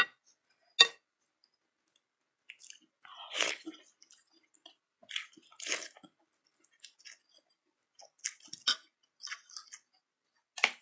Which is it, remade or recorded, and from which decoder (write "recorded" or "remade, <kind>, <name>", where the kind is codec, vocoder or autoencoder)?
recorded